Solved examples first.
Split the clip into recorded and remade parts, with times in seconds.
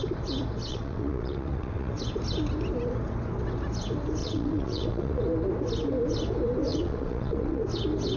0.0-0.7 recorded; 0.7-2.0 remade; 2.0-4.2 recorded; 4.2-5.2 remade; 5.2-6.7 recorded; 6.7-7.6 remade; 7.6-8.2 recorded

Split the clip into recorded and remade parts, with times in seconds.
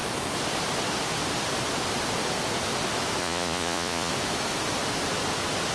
0.0-3.2 recorded; 3.2-4.1 remade; 4.1-5.7 recorded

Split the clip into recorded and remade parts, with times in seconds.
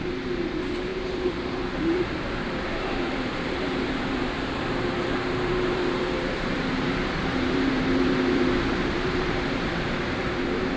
0.0-10.8 remade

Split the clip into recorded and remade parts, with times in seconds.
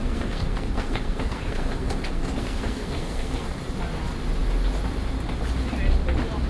0.0-3.6 remade; 3.6-6.5 recorded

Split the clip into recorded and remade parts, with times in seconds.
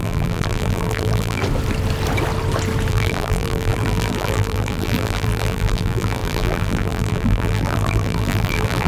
0.0-1.4 remade; 1.4-2.9 recorded; 2.9-8.9 remade